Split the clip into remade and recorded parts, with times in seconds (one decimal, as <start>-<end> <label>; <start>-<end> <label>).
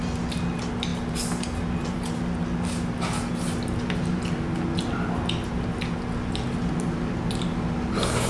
0.0-8.3 recorded